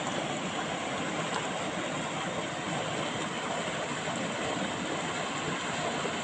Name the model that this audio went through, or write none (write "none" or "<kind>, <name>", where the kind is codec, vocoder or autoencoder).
none